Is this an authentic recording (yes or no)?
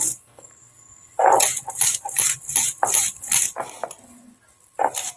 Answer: yes